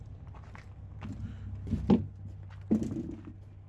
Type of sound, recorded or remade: recorded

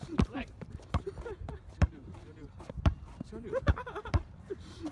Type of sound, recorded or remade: remade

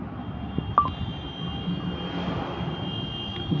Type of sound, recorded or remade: recorded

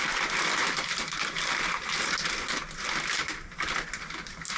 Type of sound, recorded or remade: recorded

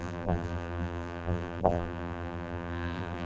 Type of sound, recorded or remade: remade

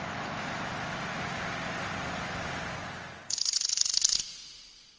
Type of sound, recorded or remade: recorded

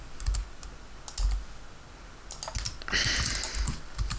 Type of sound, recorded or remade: recorded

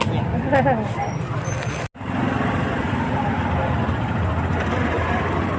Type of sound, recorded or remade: recorded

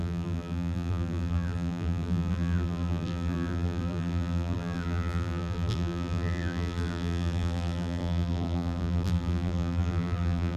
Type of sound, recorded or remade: remade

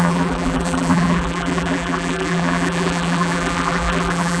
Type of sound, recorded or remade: remade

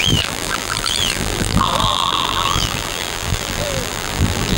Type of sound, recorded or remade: remade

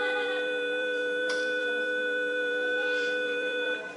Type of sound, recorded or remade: remade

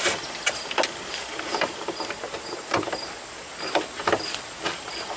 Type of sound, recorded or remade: recorded